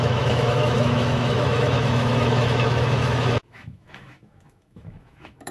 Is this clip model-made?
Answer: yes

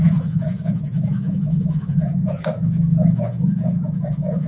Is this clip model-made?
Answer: yes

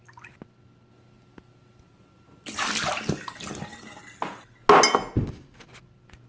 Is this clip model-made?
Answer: no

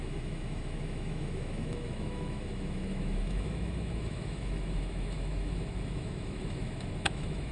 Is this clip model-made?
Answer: yes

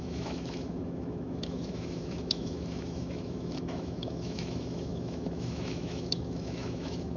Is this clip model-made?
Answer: yes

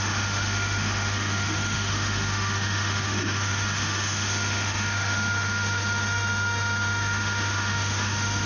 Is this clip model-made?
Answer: yes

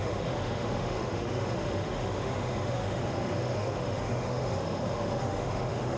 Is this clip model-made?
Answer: yes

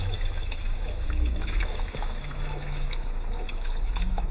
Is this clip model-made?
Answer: yes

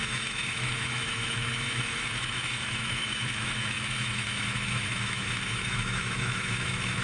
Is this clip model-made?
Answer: yes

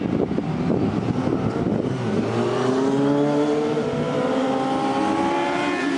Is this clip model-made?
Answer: no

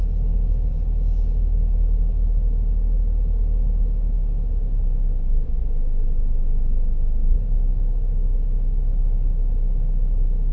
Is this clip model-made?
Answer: no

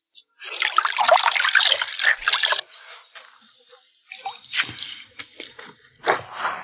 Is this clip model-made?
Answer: no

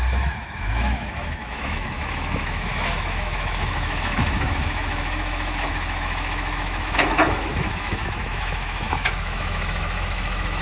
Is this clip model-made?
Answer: yes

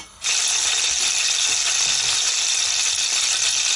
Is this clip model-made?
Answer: no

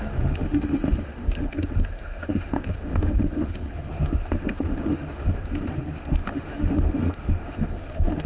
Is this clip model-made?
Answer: yes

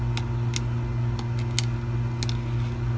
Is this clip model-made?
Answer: no